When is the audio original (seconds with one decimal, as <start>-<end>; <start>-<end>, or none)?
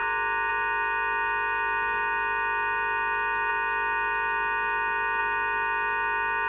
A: 0.0-6.5